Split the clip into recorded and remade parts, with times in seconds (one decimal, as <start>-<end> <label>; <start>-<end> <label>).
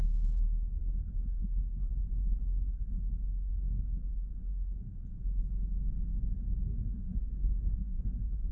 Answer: 0.0-5.1 remade; 5.1-6.2 recorded; 6.2-8.5 remade